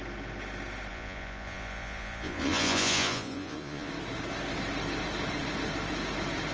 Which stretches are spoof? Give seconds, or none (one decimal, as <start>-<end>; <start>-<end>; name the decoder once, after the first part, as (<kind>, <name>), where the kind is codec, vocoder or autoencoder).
0.9-3.9 (vocoder, Vocos)